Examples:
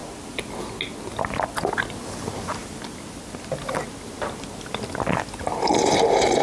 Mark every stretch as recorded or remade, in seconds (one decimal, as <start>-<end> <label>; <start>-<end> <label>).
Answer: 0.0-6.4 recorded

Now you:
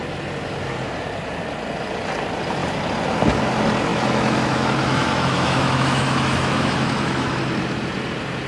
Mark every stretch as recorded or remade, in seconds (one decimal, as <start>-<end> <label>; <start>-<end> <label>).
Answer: 0.0-3.9 recorded; 3.9-7.4 remade; 7.4-8.5 recorded

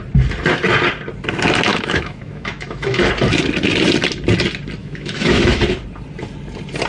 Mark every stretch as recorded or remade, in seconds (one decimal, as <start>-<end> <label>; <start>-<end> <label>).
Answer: 0.0-1.7 recorded; 1.7-3.1 remade; 3.1-4.8 recorded; 4.8-5.6 remade; 5.6-6.9 recorded